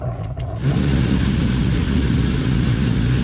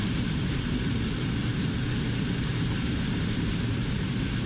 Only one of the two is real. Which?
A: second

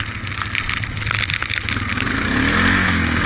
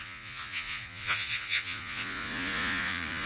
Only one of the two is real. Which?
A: first